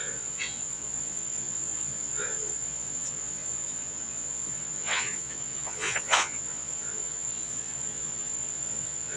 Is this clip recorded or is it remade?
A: remade